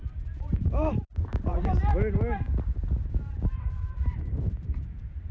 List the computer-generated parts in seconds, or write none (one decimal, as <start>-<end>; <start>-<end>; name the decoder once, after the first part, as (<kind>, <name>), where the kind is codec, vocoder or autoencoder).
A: 0.0-1.8 (vocoder, BigVGAN v2); 3.4-5.3